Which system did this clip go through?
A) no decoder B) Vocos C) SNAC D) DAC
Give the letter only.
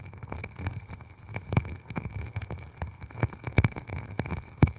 C